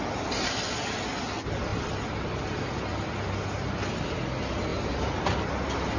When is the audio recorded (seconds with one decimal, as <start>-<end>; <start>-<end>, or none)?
0.0-6.0